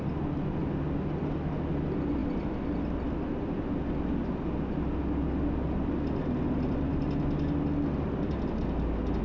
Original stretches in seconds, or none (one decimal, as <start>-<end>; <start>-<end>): 0.0-9.2